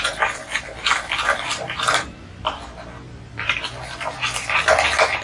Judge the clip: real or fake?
real